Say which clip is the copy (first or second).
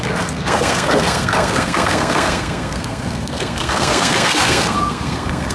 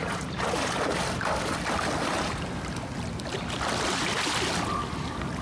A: first